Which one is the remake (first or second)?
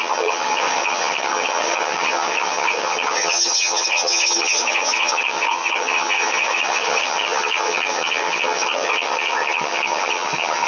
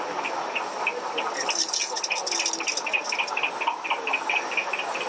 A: first